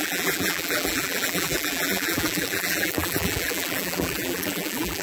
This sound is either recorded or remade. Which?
remade